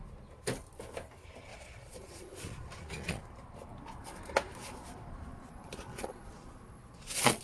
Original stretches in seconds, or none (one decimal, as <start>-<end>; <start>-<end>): 0.0-1.5; 3.2-5.3